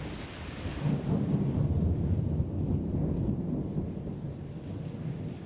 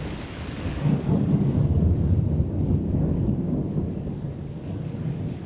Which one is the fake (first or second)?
second